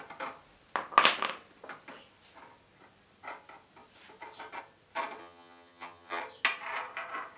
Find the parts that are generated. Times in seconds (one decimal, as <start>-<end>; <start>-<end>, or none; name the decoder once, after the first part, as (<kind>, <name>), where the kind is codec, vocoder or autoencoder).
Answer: 5.2-6.2 (vocoder, HiFi-GAN)